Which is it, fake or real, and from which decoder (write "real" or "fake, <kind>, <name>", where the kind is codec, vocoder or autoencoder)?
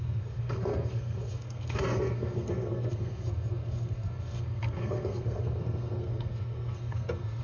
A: fake, codec, SNAC